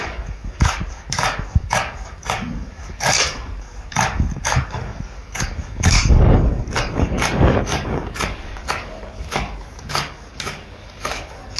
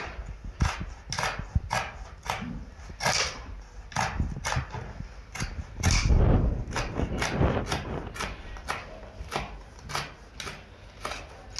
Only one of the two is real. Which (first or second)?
second